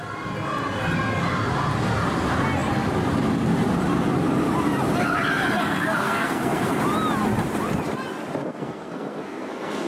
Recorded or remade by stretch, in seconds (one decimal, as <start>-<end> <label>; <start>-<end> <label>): 0.0-5.6 recorded; 5.6-6.8 remade; 6.8-8.4 recorded; 8.4-9.9 remade